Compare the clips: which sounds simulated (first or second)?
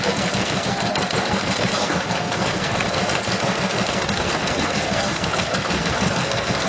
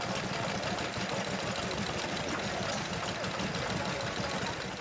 first